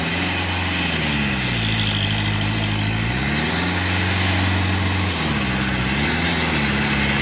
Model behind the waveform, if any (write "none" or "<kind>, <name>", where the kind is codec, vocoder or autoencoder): none